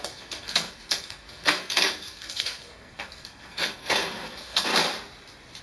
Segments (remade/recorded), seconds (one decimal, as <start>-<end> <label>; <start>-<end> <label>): 0.0-4.7 remade; 4.7-5.6 recorded